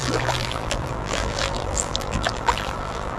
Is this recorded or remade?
remade